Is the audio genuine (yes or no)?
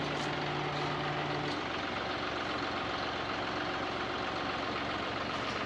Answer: yes